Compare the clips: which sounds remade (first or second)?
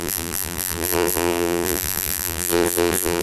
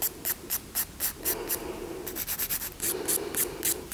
first